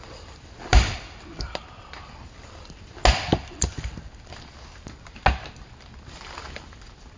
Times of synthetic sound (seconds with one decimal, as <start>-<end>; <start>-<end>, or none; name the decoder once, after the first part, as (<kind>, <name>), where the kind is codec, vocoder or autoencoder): 0.7-1.3 (vocoder, BigVGAN v2); 3.3-4.3